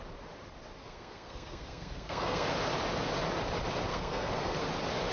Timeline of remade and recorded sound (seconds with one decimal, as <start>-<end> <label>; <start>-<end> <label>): 0.0-0.8 recorded; 0.8-2.5 remade; 2.5-3.9 recorded; 3.9-4.6 remade; 4.6-5.1 recorded